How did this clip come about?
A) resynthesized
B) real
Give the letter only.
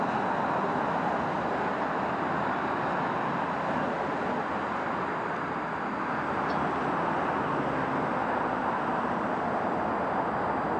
B